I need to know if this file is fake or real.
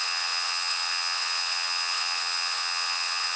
fake